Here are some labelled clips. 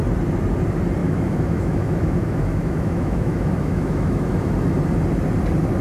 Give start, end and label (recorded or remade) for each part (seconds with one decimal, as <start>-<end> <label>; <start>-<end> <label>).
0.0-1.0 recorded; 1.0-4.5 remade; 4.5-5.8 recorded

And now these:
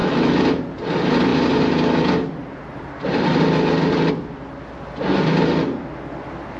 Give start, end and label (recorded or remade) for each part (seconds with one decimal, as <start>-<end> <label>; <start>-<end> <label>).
0.0-0.6 remade; 0.6-6.6 recorded

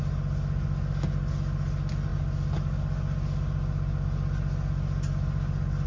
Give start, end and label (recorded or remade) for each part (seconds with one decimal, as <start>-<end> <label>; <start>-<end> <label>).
0.0-5.9 recorded

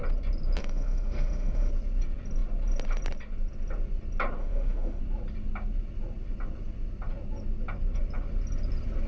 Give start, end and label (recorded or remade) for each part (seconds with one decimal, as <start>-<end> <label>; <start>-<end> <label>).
0.0-0.6 recorded; 0.6-1.7 remade; 1.7-4.4 recorded; 4.4-5.0 remade; 5.0-9.1 recorded

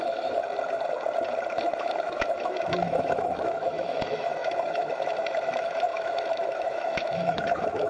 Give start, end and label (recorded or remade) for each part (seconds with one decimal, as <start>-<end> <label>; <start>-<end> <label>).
0.0-0.4 remade; 0.4-1.5 recorded; 1.5-7.9 remade

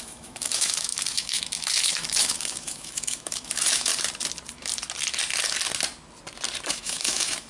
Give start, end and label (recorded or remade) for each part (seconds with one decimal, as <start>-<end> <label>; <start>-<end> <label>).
0.0-3.9 remade; 3.9-6.7 recorded; 6.7-7.5 remade